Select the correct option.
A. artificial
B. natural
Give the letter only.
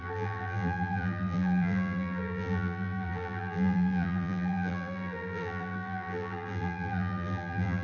A